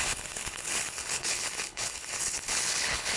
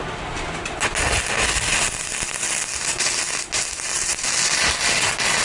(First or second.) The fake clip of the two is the first